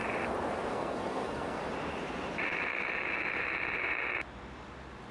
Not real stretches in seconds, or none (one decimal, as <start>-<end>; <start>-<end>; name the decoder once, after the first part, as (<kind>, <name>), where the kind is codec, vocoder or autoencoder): 0.7-1.6 (codec, SNAC)